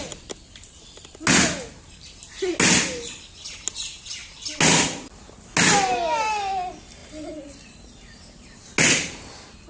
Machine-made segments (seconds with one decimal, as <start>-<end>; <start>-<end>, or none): none